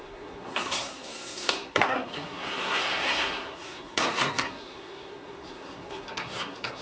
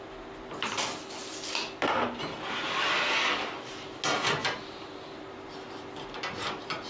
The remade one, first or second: first